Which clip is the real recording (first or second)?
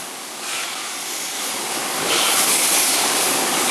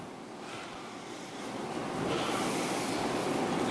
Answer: second